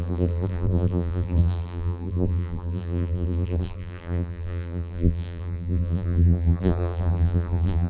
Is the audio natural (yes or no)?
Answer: no